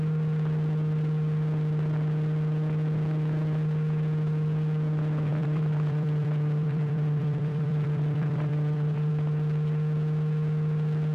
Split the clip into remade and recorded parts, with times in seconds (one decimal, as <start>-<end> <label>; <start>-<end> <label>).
0.0-5.3 recorded; 5.3-9.1 remade; 9.1-11.1 recorded